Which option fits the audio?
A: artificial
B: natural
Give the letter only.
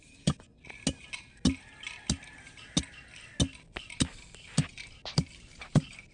B